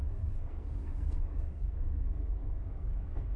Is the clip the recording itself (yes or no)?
no